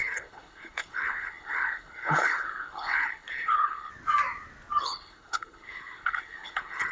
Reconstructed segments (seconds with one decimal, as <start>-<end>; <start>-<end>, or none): 0.0-3.9; 4.8-6.9